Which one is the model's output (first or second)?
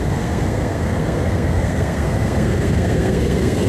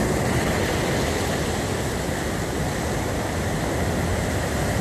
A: first